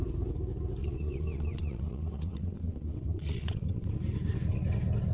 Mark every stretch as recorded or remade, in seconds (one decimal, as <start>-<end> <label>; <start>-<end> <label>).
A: 0.0-0.8 recorded; 0.8-3.9 remade; 3.9-5.1 recorded